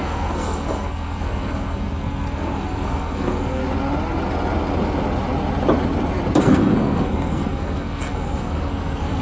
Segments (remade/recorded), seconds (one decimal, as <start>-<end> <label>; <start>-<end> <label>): 0.0-3.6 remade; 3.6-6.4 recorded; 6.4-9.2 remade